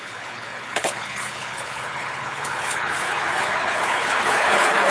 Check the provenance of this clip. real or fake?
fake